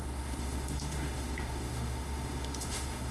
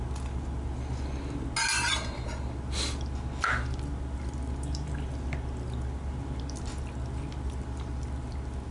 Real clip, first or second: second